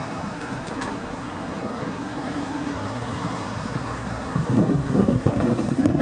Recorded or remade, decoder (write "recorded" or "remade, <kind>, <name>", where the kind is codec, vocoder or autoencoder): remade, codec, SNAC